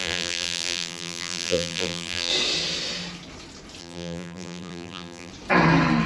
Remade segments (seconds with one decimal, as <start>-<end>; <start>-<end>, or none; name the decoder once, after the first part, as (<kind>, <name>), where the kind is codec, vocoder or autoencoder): 0.0-2.3 (vocoder, BigVGAN v2); 3.8-5.3